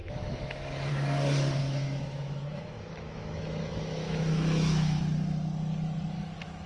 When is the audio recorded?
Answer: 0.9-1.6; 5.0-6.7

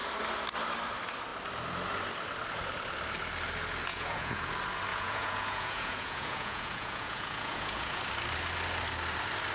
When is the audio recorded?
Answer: 0.0-3.9; 4.5-4.9; 8.0-9.5

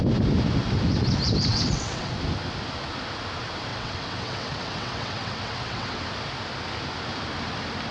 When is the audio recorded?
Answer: 0.0-1.5; 2.1-3.7; 6.0-7.9

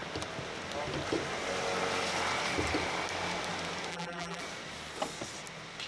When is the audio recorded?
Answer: 0.0-3.9; 4.4-5.9